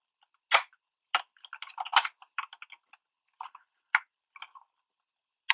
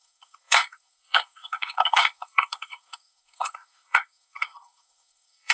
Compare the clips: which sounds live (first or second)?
first